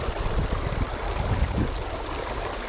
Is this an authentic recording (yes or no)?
yes